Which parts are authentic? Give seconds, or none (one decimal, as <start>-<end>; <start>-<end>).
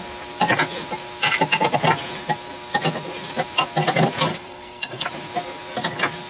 0.0-4.3; 5.1-6.3